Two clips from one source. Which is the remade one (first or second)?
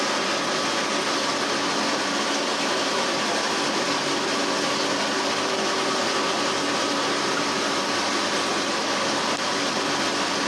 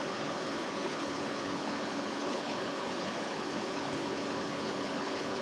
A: second